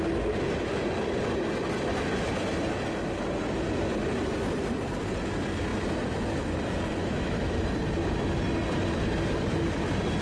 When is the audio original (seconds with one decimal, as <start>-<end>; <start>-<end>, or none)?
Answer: 0.0-7.0; 7.6-10.2